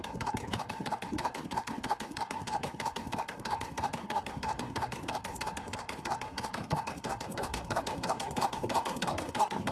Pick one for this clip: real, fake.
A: fake